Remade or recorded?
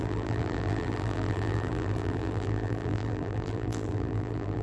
remade